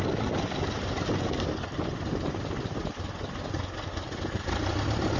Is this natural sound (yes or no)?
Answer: yes